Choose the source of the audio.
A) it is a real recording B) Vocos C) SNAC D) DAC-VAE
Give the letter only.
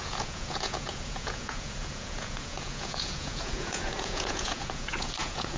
B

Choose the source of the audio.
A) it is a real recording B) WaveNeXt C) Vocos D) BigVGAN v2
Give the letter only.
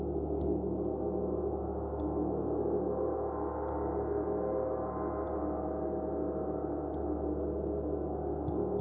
A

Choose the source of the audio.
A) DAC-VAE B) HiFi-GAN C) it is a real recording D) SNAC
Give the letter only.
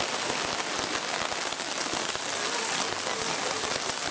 C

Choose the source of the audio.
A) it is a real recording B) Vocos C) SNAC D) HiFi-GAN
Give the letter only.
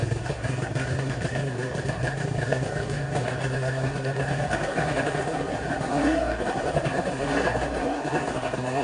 C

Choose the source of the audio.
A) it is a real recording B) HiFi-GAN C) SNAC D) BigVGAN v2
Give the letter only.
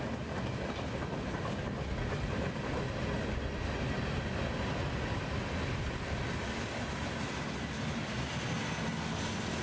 A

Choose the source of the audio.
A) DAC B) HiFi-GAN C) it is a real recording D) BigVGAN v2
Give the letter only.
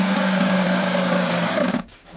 A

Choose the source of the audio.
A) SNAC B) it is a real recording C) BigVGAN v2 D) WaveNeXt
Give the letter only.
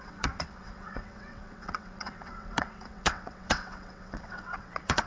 D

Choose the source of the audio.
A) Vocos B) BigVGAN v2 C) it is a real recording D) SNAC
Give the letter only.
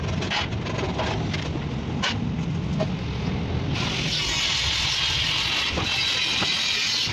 C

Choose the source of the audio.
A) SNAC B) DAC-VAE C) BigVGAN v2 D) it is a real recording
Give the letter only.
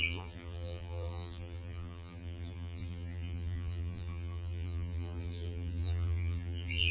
C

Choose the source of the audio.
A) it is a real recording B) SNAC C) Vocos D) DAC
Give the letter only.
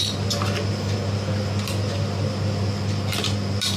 A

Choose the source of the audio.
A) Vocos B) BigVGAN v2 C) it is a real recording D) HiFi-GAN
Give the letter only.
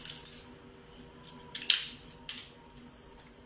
C